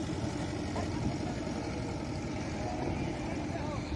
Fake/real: real